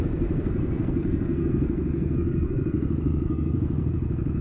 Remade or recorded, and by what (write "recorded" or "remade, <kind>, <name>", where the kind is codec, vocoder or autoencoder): remade, codec, SNAC